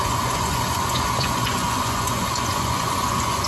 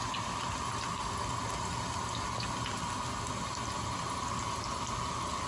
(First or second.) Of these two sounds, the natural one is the second